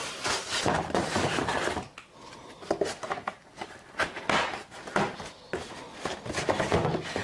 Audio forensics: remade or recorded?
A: recorded